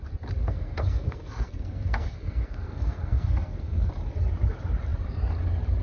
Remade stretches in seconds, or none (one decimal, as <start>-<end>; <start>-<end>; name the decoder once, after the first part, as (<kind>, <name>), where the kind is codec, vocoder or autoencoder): 0.4-3.9 (codec, SNAC)